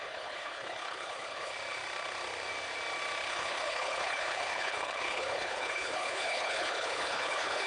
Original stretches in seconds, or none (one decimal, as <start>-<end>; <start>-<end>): 1.5-3.3